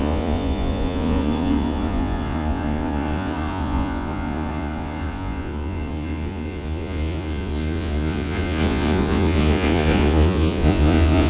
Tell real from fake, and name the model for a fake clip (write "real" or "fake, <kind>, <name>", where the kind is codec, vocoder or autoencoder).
fake, vocoder, Vocos